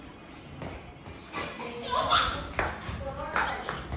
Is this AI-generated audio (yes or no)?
no